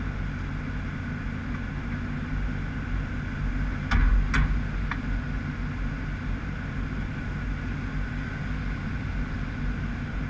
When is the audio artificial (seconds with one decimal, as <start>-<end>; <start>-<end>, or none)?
none